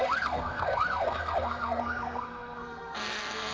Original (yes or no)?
no